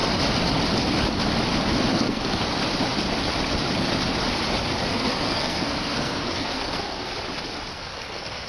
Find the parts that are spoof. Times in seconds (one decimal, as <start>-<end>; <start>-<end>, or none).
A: 1.9-2.4; 4.9-7.1; 7.7-8.5